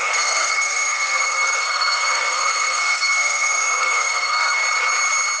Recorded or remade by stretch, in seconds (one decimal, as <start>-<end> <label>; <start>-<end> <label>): 0.0-4.6 remade; 4.6-5.4 recorded